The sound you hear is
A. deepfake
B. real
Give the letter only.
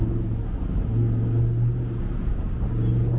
B